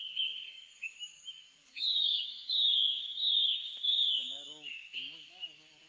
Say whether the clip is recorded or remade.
remade